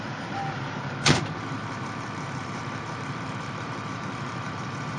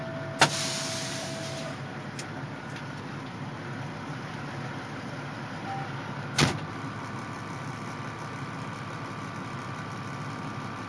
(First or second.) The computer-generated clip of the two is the first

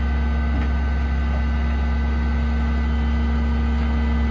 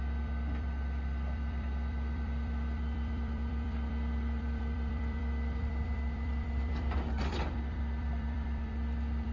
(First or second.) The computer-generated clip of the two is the second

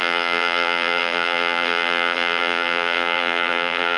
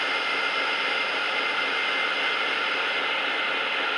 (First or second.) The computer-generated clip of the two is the first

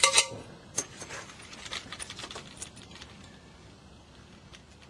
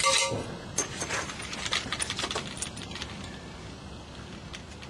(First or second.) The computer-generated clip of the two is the first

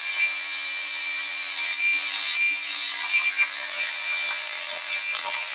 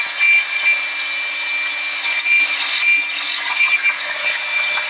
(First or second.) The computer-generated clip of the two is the first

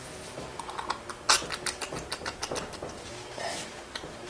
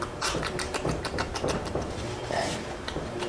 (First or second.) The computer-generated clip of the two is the second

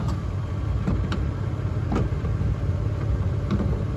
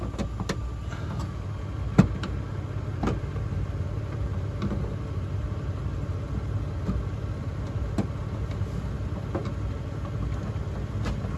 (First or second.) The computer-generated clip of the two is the first